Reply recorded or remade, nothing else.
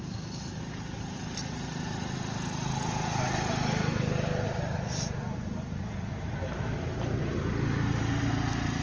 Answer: recorded